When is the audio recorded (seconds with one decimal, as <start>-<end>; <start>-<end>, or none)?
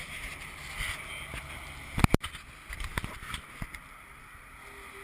0.0-5.0